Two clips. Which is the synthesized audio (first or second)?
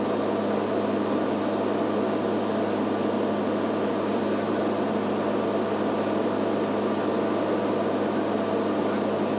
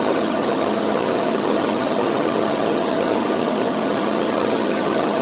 second